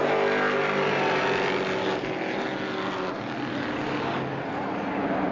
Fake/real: real